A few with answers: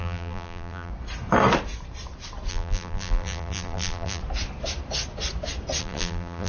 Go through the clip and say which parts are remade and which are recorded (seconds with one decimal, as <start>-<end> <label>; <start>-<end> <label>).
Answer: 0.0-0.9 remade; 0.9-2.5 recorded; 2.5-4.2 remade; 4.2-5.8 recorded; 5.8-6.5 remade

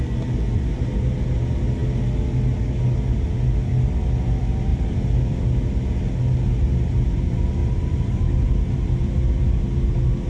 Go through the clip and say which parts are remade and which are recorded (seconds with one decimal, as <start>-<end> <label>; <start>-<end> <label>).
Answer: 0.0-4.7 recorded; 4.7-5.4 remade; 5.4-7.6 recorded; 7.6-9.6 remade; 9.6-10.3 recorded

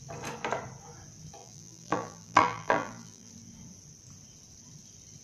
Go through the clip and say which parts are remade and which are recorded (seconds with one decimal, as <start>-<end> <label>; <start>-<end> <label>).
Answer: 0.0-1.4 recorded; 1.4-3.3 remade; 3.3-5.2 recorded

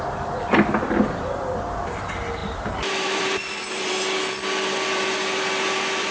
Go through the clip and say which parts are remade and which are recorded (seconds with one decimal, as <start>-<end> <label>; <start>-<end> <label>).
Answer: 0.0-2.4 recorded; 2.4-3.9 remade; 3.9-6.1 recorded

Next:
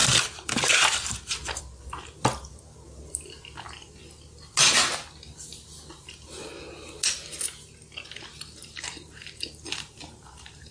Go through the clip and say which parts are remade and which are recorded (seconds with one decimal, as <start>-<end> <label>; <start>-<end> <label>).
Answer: 0.0-1.6 remade; 1.6-8.6 recorded; 8.6-10.7 remade

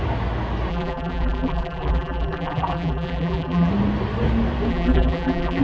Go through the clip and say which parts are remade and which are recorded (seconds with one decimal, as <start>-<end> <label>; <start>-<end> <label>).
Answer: 0.0-0.7 recorded; 0.7-3.7 remade; 3.7-4.7 recorded; 4.7-5.6 remade